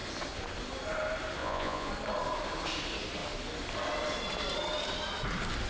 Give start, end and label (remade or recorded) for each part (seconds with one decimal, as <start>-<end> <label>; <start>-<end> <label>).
0.0-1.4 recorded; 1.4-1.9 remade; 1.9-5.7 recorded